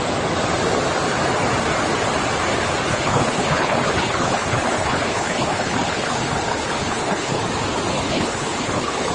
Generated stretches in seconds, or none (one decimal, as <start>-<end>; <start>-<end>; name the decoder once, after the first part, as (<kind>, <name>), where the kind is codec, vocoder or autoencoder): 2.9-7.4 (codec, HILCodec); 7.9-9.1